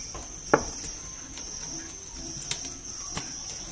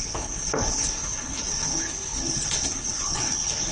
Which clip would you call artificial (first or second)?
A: second